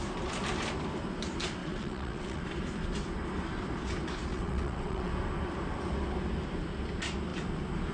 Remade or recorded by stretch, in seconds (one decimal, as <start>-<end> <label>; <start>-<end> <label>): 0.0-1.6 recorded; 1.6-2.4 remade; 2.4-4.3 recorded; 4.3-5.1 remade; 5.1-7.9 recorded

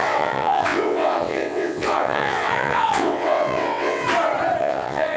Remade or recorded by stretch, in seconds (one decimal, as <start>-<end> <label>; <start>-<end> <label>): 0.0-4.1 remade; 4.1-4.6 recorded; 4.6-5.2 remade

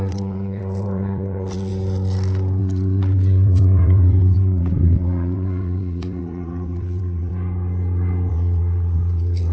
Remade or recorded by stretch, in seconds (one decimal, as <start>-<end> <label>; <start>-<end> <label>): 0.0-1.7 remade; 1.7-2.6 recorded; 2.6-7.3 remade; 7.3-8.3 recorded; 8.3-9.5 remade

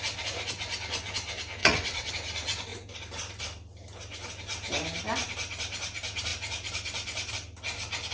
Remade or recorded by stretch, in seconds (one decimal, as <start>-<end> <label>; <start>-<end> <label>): 0.0-1.6 recorded; 1.6-2.1 remade; 2.1-8.1 recorded

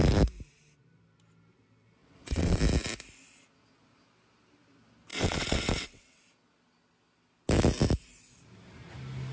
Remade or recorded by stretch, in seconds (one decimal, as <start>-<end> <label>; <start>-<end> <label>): 0.0-2.0 recorded; 2.0-2.6 remade; 2.6-5.1 recorded; 5.1-6.2 remade; 6.2-9.3 recorded